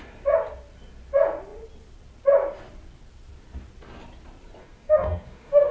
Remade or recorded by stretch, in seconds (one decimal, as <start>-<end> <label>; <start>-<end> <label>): 0.0-4.6 recorded; 4.6-5.7 remade